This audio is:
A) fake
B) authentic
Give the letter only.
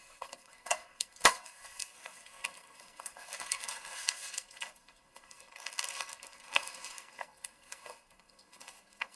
A